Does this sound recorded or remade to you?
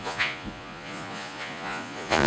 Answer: remade